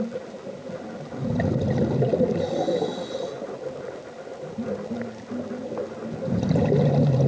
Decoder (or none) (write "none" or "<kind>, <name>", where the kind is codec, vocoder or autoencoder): none